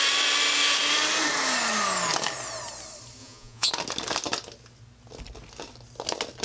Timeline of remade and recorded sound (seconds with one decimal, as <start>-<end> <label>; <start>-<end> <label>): 0.0-3.2 recorded; 3.2-3.7 remade; 3.7-6.4 recorded